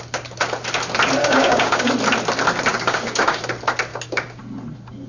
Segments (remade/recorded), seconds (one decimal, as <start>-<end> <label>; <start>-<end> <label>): 0.0-1.2 recorded; 1.2-1.9 remade; 1.9-2.7 recorded; 2.7-3.4 remade; 3.4-3.9 recorded; 3.9-4.4 remade; 4.4-5.1 recorded